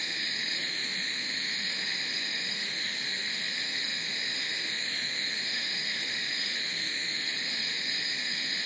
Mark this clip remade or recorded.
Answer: remade